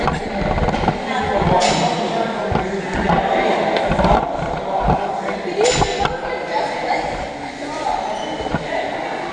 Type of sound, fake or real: real